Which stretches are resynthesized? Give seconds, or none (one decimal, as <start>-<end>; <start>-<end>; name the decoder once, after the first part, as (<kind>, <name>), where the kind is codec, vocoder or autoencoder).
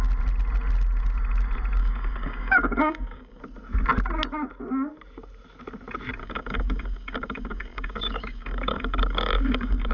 1.8-3.4 (codec, DAC); 6.2-9.9